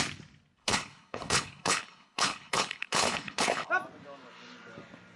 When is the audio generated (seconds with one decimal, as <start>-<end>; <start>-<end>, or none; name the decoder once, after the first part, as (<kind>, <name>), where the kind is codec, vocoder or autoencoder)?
0.6-3.7 (codec, HILCodec)